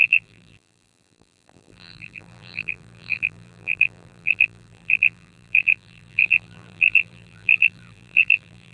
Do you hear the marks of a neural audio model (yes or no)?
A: yes